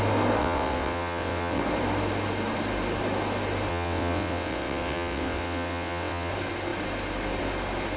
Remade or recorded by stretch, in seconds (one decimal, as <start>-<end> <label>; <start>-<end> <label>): 0.0-0.4 recorded; 0.4-1.6 remade; 1.6-3.7 recorded; 3.7-6.3 remade; 6.3-8.0 recorded

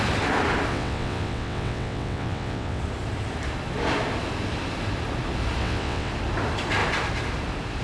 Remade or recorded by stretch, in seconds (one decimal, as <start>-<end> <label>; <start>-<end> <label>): 0.0-0.7 recorded; 0.7-2.8 remade; 2.8-5.6 recorded; 5.6-6.1 remade; 6.1-7.8 recorded

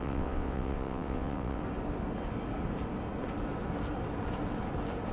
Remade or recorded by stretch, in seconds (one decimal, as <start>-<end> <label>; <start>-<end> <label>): 0.0-1.6 remade; 1.6-5.1 recorded

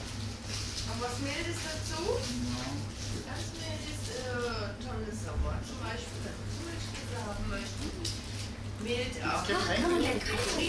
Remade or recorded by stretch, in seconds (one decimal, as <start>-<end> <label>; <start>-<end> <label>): 0.0-9.8 recorded; 9.8-10.7 remade

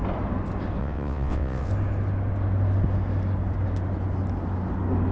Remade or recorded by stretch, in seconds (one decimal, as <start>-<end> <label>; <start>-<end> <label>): 0.0-0.8 recorded; 0.8-1.7 remade; 1.7-5.1 recorded